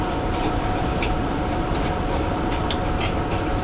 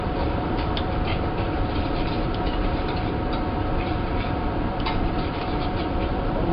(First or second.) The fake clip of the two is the second